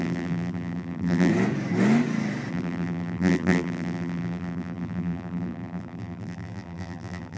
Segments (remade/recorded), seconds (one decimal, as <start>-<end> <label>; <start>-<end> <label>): 0.0-1.3 remade; 1.3-2.5 recorded; 2.5-7.4 remade